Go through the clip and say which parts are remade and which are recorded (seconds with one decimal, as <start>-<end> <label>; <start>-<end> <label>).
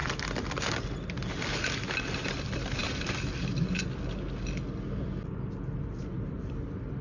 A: 0.0-7.0 recorded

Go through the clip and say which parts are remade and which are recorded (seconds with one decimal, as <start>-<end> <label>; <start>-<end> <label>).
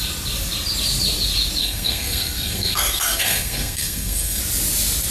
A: 0.0-1.6 recorded; 1.6-4.4 remade; 4.4-5.1 recorded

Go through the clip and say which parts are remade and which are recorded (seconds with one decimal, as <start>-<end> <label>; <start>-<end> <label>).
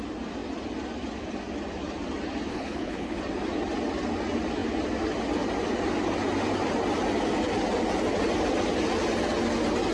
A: 0.0-2.5 recorded; 2.5-3.2 remade; 3.2-9.9 recorded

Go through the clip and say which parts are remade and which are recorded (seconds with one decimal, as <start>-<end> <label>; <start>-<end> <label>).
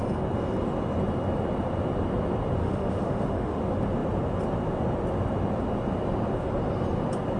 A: 0.0-2.6 recorded; 2.6-3.6 remade; 3.6-7.4 recorded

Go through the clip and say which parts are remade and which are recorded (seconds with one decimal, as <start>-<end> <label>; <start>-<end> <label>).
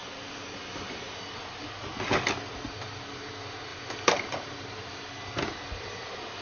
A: 0.0-0.5 remade; 0.5-3.7 recorded; 3.7-4.9 remade; 4.9-6.4 recorded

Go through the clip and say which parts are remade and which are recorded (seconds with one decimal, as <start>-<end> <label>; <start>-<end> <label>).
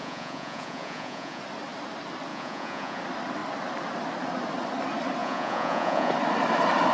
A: 0.0-1.4 remade; 1.4-2.3 recorded; 2.3-3.0 remade; 3.0-5.2 recorded; 5.2-6.1 remade; 6.1-6.9 recorded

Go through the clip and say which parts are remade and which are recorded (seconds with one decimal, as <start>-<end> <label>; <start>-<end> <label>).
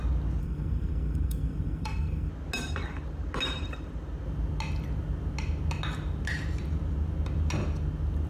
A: 0.0-0.4 recorded; 0.4-2.3 remade; 2.3-8.3 recorded